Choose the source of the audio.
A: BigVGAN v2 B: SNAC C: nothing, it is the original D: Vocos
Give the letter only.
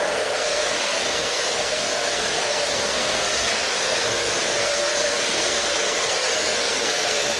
B